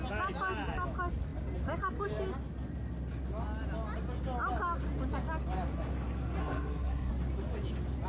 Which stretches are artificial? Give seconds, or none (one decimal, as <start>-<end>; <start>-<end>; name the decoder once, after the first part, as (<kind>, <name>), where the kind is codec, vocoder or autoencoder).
6.4-7.1 (codec, SNAC)